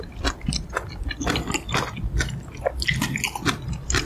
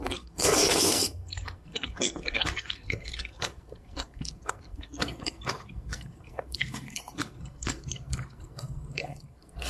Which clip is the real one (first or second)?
first